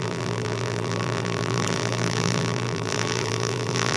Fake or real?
fake